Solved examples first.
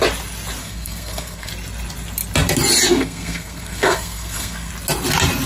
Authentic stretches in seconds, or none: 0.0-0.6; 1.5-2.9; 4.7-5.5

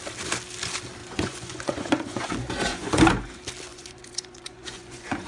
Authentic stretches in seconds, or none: 0.0-1.0; 2.3-2.7; 3.3-3.7